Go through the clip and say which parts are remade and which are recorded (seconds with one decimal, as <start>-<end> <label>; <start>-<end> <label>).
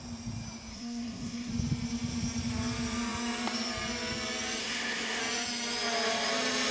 0.0-0.7 recorded; 0.7-1.5 remade; 1.5-4.6 recorded; 4.6-5.2 remade; 5.2-6.7 recorded